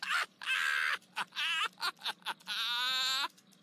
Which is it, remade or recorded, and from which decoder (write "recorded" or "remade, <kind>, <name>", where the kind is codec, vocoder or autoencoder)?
recorded